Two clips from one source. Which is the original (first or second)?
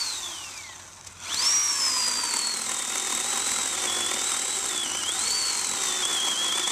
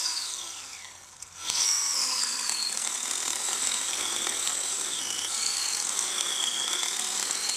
first